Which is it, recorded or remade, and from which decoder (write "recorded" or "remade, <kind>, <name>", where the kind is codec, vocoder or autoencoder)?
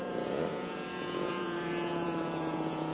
remade, vocoder, Vocos